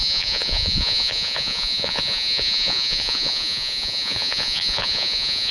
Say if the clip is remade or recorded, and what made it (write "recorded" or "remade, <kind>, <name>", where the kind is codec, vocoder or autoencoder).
remade, vocoder, Vocos